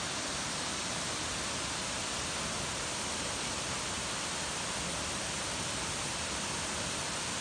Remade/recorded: recorded